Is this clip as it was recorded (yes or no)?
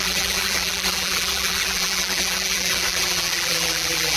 no